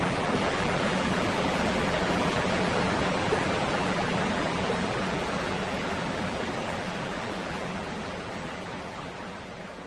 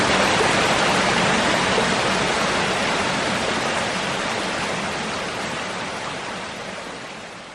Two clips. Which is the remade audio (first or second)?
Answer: first